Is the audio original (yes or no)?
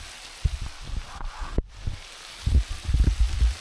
yes